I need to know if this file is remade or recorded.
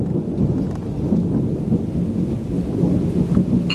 recorded